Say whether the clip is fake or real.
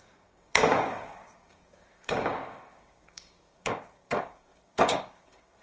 fake